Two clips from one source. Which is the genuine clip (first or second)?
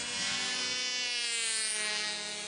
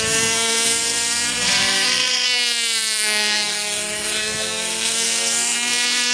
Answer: first